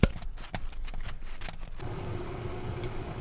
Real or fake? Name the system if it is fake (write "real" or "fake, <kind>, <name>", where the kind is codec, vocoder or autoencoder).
real